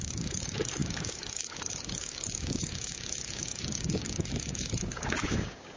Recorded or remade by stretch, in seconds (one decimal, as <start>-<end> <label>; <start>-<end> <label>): 0.0-5.8 remade